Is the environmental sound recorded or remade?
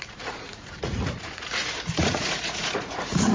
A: remade